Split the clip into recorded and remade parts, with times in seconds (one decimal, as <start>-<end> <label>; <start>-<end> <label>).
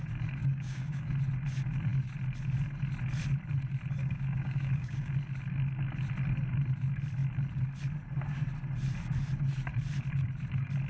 0.0-0.4 recorded; 0.4-1.1 remade; 1.1-4.0 recorded; 4.0-5.1 remade; 5.1-10.9 recorded